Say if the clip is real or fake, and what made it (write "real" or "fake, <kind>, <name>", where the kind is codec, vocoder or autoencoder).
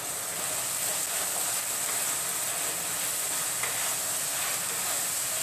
real